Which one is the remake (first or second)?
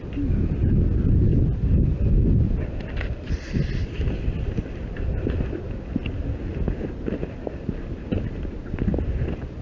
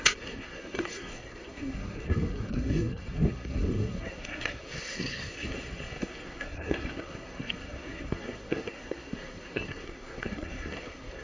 second